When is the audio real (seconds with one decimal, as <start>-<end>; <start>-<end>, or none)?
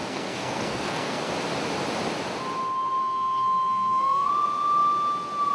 1.3-3.0; 4.3-5.5